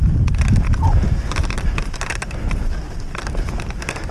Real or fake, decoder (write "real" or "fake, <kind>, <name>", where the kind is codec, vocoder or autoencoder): real